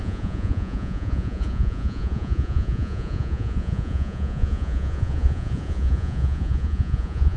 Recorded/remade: remade